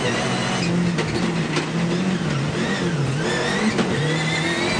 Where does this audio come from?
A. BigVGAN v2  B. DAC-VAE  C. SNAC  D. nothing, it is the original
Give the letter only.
D